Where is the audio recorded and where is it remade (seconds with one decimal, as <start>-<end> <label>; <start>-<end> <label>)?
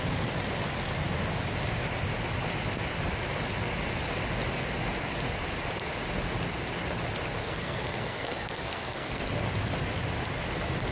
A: 0.0-7.4 recorded; 7.4-9.2 remade; 9.2-10.9 recorded